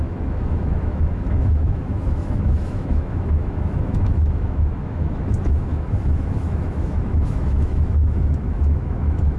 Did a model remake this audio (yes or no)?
yes